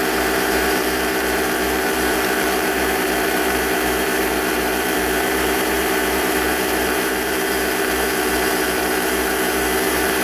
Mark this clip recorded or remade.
remade